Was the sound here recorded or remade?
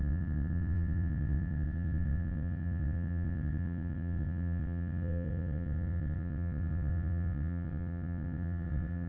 remade